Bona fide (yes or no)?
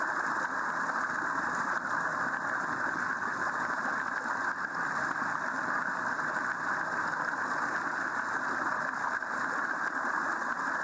yes